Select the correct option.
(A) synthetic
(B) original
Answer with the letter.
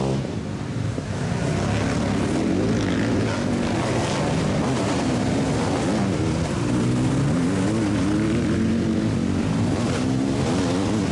B